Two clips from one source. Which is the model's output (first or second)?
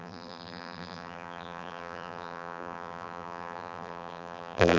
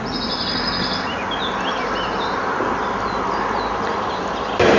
first